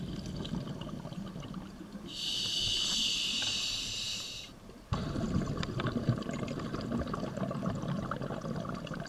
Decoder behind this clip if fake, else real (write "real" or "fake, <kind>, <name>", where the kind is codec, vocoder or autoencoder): real